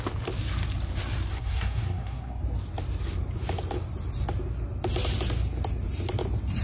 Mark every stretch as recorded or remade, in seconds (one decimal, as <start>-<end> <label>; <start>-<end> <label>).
0.0-1.3 recorded; 1.3-2.4 remade; 2.4-6.6 recorded